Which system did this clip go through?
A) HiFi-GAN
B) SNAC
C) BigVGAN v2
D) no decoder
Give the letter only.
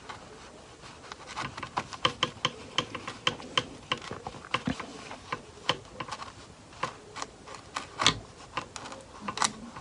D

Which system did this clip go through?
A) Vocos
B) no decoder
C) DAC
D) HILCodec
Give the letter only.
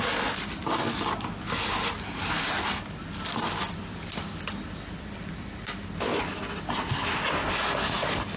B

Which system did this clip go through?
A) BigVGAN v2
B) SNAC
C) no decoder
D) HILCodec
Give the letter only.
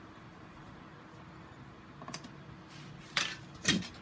C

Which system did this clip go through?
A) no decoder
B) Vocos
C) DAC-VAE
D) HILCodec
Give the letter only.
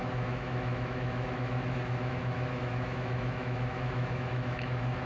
C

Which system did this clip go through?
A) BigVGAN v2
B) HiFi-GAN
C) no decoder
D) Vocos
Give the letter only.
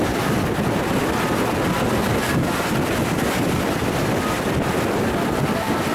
C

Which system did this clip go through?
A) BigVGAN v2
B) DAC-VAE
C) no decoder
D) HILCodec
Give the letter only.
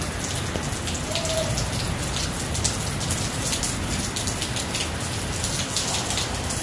C